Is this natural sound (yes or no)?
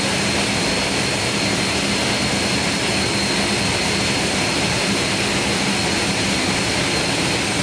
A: yes